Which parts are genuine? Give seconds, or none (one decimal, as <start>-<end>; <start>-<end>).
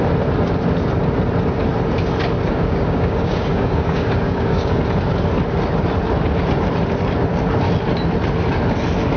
0.0-2.5; 4.8-9.2